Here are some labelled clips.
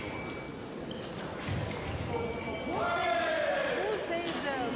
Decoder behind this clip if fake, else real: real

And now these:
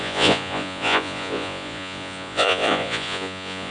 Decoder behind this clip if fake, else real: fake, vocoder, Vocos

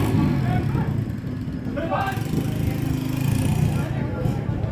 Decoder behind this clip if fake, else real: real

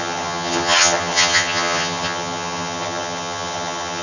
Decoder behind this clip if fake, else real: fake, vocoder, HiFi-GAN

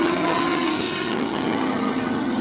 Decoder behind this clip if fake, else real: fake, vocoder, HiFi-GAN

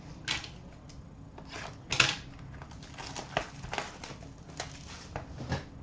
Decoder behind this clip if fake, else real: real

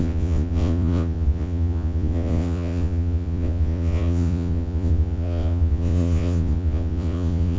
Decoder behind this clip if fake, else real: fake, vocoder, Vocos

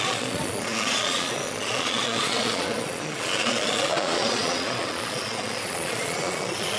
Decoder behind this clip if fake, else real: fake, vocoder, Vocos